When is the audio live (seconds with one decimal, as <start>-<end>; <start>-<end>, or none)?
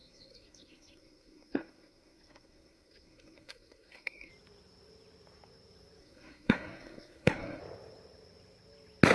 4.3-6.0; 7.6-9.1